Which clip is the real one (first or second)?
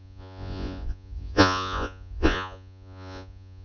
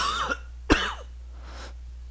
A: second